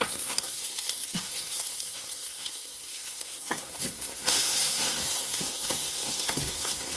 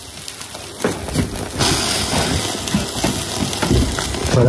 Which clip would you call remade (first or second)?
first